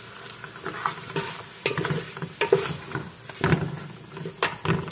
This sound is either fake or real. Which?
real